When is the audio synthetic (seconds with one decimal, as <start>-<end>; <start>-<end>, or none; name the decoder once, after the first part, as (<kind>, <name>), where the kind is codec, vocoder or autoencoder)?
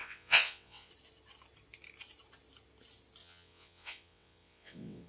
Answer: 0.0-0.9 (vocoder, WaveNeXt); 3.2-5.1